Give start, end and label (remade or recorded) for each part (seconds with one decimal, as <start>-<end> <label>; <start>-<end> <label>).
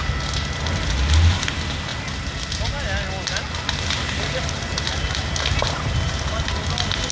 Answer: 0.0-7.1 recorded